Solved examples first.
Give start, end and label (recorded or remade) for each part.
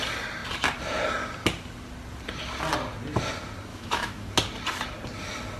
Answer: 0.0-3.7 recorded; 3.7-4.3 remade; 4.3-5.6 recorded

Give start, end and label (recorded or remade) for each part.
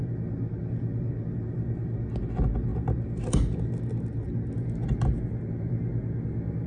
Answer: 0.0-6.7 recorded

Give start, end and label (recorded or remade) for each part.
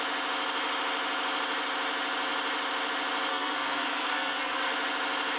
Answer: 0.0-3.3 recorded; 3.3-4.7 remade; 4.7-5.4 recorded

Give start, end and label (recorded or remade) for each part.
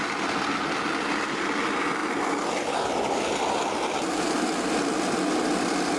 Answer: 0.0-6.0 recorded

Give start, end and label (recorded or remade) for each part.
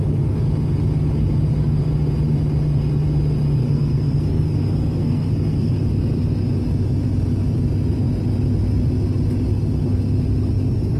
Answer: 0.0-3.6 recorded; 3.6-5.7 remade; 5.7-11.0 recorded